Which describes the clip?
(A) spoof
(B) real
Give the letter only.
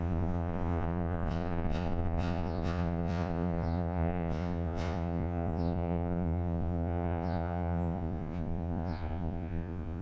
A